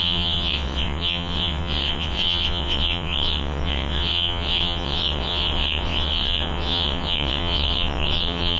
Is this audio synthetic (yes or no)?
yes